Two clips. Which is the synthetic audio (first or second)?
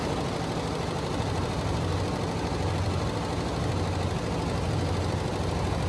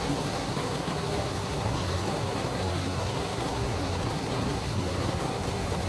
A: second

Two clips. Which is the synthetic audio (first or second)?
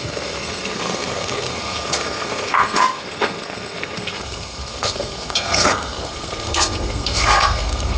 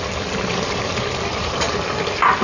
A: first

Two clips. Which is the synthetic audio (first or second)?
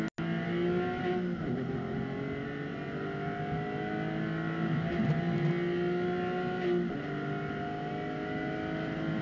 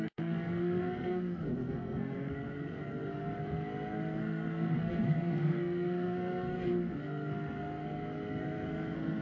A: second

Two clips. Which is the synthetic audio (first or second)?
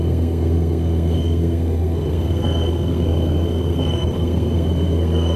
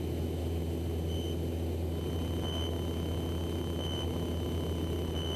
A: first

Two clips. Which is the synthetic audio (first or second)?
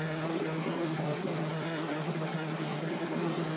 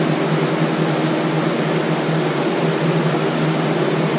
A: first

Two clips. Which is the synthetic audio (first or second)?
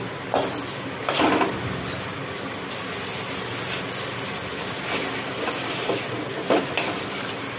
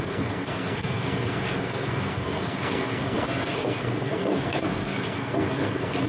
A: second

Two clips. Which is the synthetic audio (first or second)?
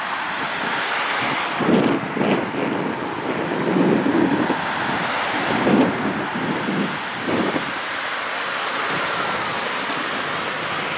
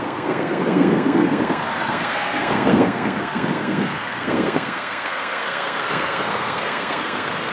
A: second